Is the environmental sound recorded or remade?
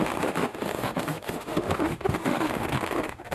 remade